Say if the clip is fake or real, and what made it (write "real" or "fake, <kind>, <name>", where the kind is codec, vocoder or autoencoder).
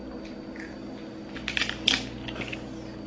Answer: real